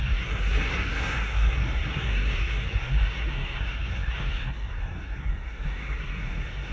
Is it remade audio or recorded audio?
remade